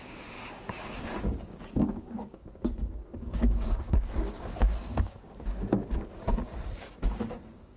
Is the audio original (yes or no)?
no